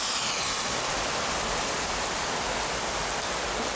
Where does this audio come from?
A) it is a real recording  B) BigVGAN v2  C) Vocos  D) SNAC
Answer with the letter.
A